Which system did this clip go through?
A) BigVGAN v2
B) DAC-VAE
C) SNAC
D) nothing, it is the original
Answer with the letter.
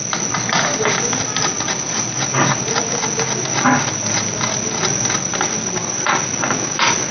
D